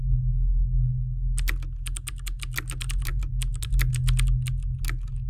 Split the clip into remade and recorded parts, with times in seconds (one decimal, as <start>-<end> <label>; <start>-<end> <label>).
0.0-5.3 recorded